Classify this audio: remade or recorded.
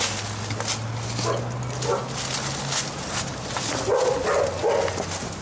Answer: recorded